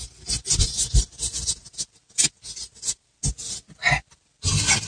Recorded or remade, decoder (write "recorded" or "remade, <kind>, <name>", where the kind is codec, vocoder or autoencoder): recorded